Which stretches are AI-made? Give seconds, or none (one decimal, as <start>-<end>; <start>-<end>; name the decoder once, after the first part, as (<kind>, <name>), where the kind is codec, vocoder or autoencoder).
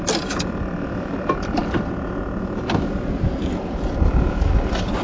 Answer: none